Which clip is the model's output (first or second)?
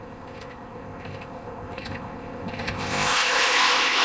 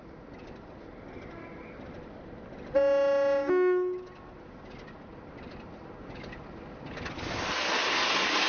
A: first